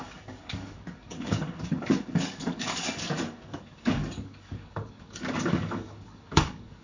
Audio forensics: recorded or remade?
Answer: remade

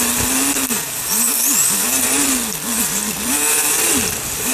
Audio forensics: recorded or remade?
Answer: recorded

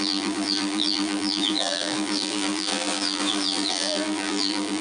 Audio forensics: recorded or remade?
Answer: remade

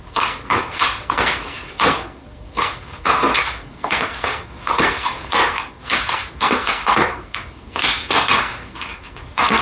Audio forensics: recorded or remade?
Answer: remade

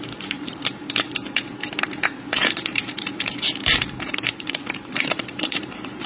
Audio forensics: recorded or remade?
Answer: remade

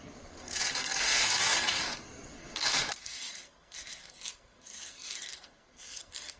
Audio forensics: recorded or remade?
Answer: remade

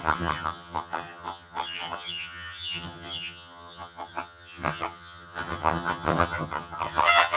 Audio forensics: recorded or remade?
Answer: remade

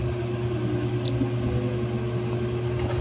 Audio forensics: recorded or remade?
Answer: recorded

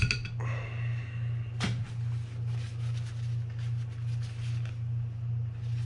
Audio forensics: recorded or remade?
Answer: recorded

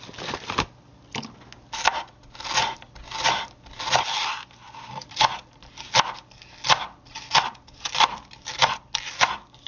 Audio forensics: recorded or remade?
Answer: recorded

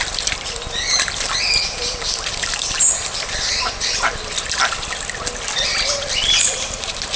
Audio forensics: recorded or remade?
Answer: recorded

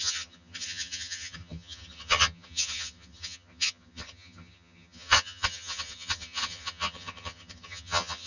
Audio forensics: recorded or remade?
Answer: remade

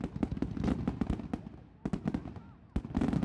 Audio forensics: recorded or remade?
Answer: recorded